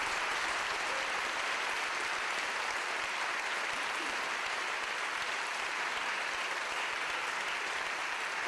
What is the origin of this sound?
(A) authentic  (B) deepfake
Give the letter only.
A